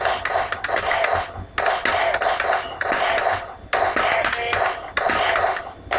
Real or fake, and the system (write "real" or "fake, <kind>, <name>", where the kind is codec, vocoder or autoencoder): real